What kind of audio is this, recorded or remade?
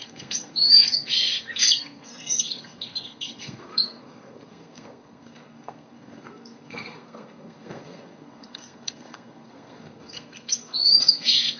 remade